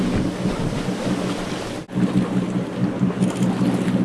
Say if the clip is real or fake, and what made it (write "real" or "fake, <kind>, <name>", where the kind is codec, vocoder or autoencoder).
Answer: real